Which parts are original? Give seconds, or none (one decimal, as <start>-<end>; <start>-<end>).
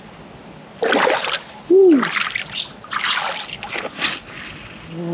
0.0-5.1